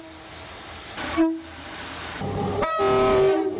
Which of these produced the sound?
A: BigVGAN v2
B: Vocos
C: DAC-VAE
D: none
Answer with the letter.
D